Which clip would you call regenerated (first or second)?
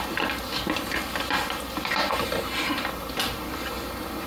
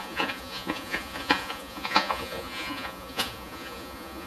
second